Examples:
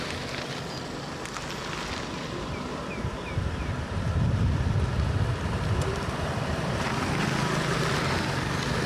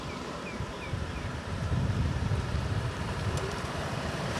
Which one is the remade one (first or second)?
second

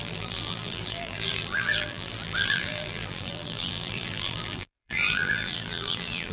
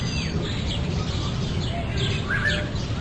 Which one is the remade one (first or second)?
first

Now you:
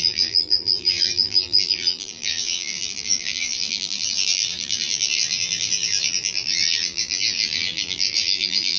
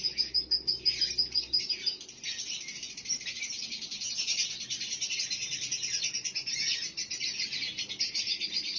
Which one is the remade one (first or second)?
first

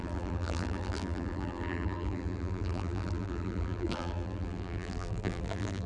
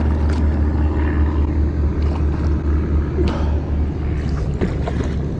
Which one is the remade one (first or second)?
first